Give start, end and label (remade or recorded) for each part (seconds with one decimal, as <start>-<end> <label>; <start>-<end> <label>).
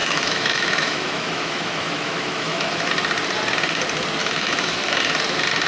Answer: 0.0-2.9 remade; 2.9-4.2 recorded; 4.2-5.0 remade; 5.0-5.7 recorded